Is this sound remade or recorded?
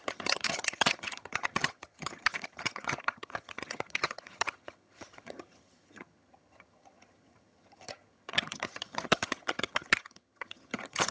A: remade